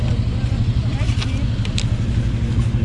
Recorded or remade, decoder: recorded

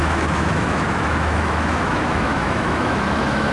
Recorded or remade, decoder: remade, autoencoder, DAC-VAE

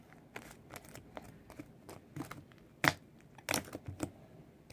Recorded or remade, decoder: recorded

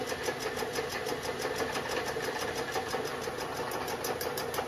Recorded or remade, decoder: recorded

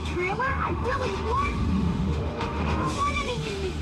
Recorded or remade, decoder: remade, autoencoder, DAC-VAE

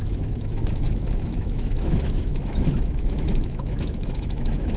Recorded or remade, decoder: remade, autoencoder, DAC-VAE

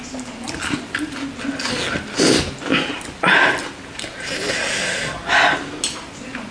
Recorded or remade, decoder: recorded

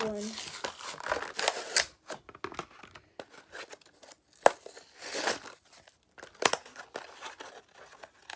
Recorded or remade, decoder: recorded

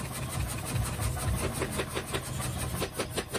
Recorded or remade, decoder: recorded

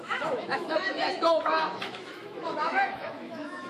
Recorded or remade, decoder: remade, autoencoder, DAC-VAE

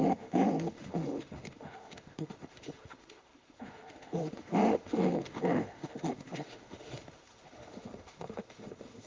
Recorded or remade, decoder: remade, autoencoder, DAC-VAE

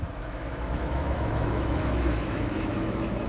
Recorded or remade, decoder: remade, autoencoder, DAC-VAE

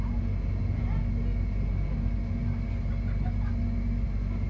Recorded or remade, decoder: recorded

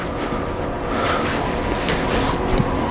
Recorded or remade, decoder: recorded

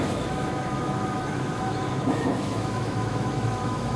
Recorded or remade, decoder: remade, autoencoder, DAC-VAE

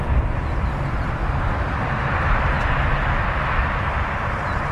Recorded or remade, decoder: recorded